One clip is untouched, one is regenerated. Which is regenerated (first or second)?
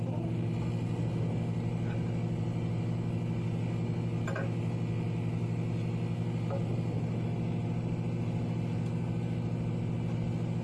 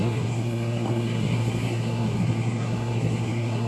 second